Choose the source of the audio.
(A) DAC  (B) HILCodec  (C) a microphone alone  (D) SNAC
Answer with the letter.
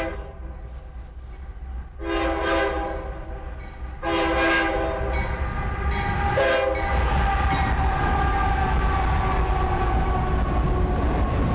C